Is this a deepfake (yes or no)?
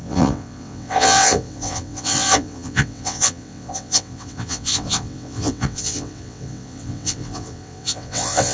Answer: yes